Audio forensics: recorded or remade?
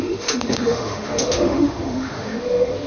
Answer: remade